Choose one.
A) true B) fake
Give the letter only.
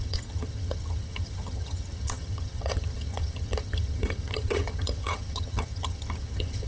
B